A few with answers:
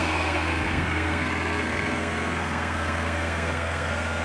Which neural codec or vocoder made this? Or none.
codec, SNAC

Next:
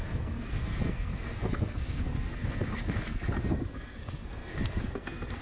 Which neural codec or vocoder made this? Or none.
codec, SNAC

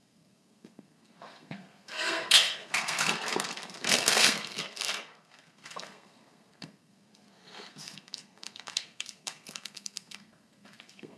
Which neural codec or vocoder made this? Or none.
codec, SNAC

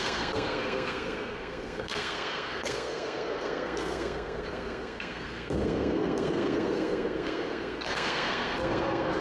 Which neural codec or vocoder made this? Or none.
codec, SNAC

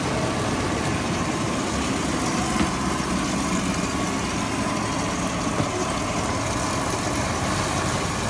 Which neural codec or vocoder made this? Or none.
none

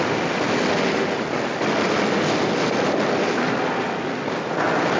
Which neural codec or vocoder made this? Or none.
none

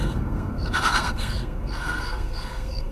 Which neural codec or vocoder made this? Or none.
codec, SNAC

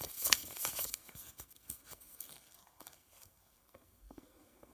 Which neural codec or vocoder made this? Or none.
codec, SNAC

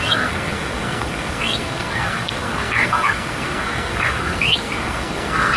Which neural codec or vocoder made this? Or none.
codec, SNAC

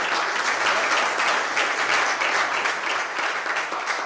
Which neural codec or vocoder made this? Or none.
none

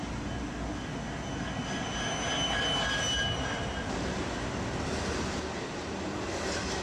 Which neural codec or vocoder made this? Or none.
none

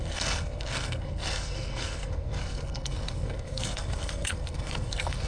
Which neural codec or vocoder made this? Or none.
codec, SNAC